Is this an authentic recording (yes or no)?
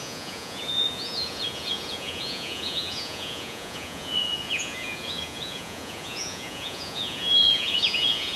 no